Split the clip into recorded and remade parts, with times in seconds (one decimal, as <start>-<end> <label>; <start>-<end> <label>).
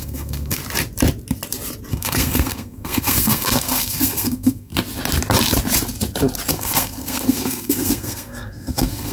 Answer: 0.0-0.6 remade; 0.6-1.9 recorded; 1.9-4.7 remade; 4.7-6.5 recorded; 6.5-9.1 remade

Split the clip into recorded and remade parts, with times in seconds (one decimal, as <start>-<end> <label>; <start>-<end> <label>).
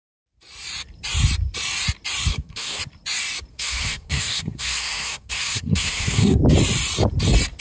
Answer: 0.0-2.3 recorded; 2.3-2.8 remade; 2.8-3.5 recorded; 3.5-6.4 remade; 6.4-7.6 recorded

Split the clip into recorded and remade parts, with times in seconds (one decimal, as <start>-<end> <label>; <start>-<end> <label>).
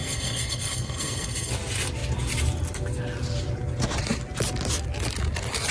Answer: 0.0-1.5 remade; 1.5-5.7 recorded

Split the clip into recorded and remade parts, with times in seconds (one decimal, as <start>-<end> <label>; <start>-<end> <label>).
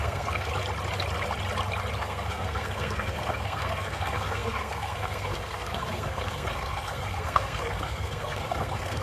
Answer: 0.0-0.5 remade; 0.5-2.0 recorded; 2.0-9.0 remade